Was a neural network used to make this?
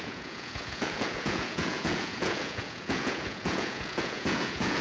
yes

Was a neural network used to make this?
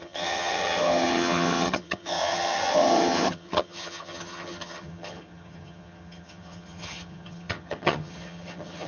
yes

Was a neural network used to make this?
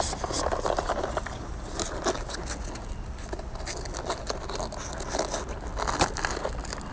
no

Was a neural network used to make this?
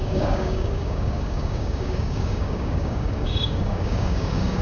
yes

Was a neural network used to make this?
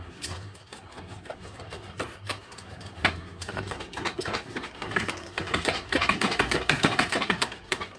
yes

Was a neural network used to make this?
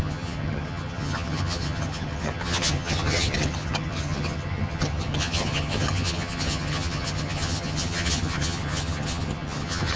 yes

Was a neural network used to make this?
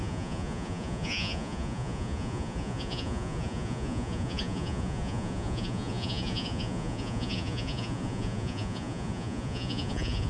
yes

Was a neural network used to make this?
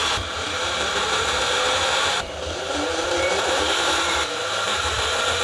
yes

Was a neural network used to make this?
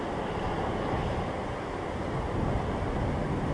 no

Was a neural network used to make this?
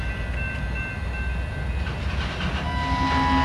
no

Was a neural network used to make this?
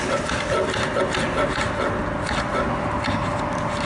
no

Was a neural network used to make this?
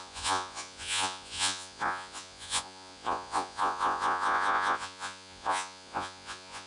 yes